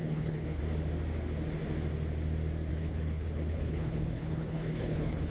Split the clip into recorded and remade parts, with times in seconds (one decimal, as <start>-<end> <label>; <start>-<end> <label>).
0.0-0.6 remade; 0.6-2.7 recorded; 2.7-5.3 remade